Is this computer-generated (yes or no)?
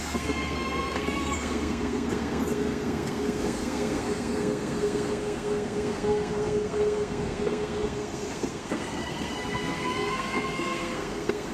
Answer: yes